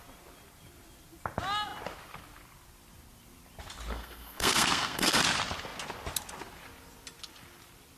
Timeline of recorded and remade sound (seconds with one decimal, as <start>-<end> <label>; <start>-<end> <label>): 0.0-3.9 recorded; 3.9-5.2 remade; 5.2-8.0 recorded